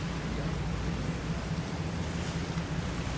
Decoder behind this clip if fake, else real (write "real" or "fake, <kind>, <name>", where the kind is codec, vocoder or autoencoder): real